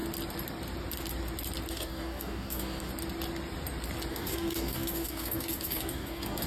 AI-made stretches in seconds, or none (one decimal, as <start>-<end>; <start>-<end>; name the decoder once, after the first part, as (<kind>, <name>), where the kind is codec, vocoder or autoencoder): 1.7-2.9 (codec, DAC); 4.1-6.5